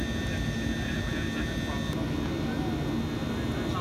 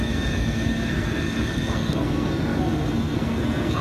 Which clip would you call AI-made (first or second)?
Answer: second